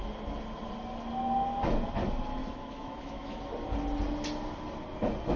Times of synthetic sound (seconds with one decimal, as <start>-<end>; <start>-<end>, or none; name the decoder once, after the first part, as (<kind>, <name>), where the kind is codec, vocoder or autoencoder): 2.4-3.4 (autoencoder, DAC-VAE)